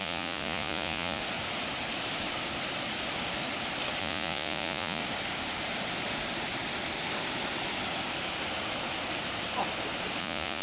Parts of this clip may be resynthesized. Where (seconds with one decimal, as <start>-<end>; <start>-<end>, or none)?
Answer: 0.0-1.2; 4.0-5.0; 10.2-10.6